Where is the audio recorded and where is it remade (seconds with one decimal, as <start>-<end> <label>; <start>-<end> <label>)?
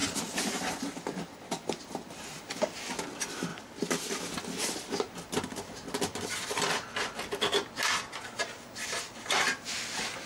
0.0-2.4 remade; 2.4-10.3 recorded